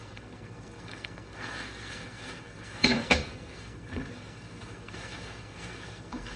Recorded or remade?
remade